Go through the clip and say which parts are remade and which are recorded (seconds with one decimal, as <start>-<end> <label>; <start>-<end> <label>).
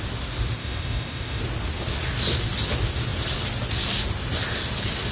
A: 0.0-0.6 recorded; 0.6-1.4 remade; 1.4-5.1 recorded